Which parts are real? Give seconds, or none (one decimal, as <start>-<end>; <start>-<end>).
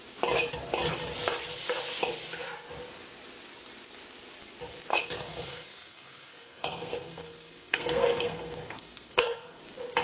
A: 0.0-4.9; 9.6-10.0